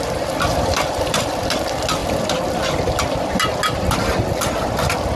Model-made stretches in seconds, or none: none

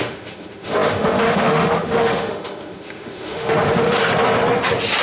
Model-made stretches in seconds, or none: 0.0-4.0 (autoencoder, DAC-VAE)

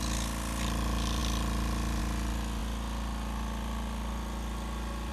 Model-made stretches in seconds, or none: none